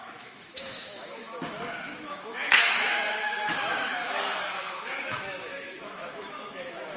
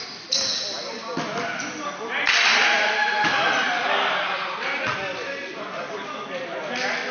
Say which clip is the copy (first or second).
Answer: first